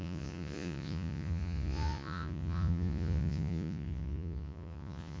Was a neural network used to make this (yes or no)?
yes